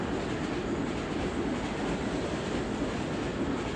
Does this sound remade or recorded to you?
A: recorded